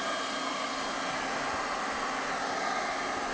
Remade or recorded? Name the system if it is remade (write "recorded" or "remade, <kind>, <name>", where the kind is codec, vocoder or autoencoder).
recorded